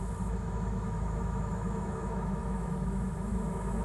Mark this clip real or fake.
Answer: fake